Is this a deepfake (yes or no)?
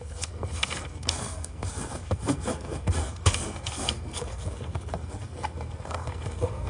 yes